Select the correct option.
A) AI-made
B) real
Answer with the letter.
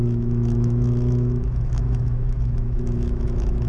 A